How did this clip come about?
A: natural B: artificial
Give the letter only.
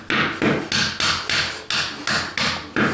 A